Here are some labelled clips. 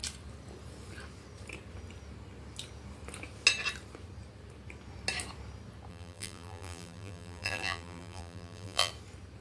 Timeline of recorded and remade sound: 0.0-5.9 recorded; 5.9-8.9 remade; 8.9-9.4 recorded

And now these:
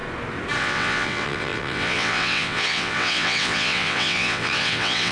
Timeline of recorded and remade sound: 0.0-0.6 recorded; 0.6-5.1 remade

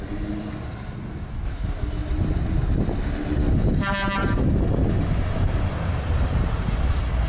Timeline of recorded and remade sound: 0.0-4.2 recorded; 4.2-6.7 remade; 6.7-7.3 recorded

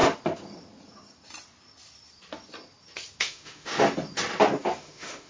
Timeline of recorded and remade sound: 0.0-3.2 recorded; 3.2-3.7 remade; 3.7-4.8 recorded; 4.8-5.3 remade

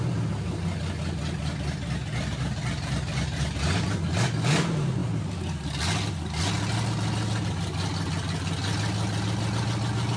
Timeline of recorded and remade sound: 0.0-10.2 recorded

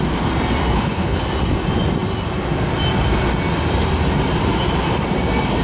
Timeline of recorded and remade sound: 0.0-0.7 recorded; 0.7-1.2 remade; 1.2-5.6 recorded